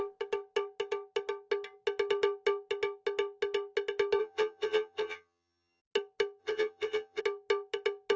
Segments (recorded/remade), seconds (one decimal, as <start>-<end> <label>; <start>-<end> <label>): 0.0-4.2 recorded; 4.2-5.8 remade; 5.8-6.4 recorded; 6.4-7.2 remade; 7.2-8.2 recorded